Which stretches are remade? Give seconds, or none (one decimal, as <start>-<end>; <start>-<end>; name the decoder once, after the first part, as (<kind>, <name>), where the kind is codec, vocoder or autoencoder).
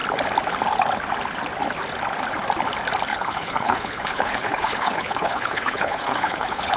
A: 3.1-6.8 (codec, HILCodec)